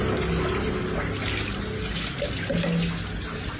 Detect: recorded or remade recorded